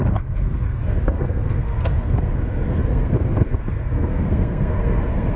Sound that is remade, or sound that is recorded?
remade